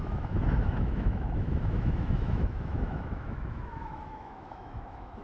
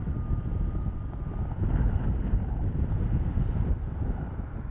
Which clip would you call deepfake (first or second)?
first